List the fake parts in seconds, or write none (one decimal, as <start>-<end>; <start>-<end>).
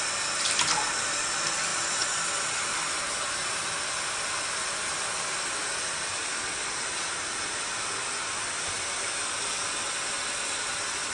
none